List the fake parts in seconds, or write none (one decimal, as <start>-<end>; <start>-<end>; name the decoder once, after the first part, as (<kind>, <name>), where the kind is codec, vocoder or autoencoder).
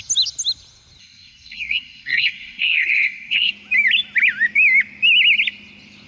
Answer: 1.0-3.5 (codec, SNAC)